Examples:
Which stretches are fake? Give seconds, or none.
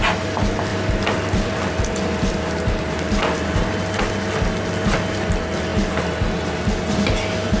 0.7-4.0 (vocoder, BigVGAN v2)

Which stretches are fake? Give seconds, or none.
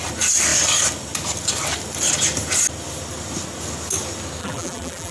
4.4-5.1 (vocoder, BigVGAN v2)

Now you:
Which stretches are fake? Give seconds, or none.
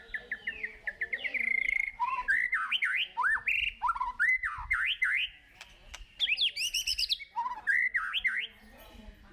0.7-2.5 (vocoder, BigVGAN v2)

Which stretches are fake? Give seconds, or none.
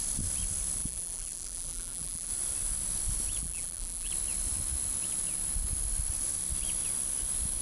0.8-2.3 (vocoder, BigVGAN v2); 3.4-4.1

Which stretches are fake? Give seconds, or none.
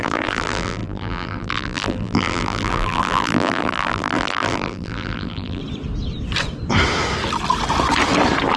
0.0-5.6 (vocoder, BigVGAN v2)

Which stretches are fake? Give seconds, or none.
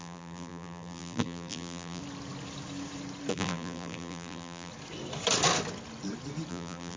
0.0-2.0 (vocoder, BigVGAN v2); 3.3-4.7; 6.5-7.0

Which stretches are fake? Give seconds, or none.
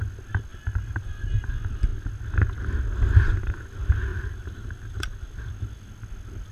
0.5-1.5 (vocoder, BigVGAN v2); 4.1-5.6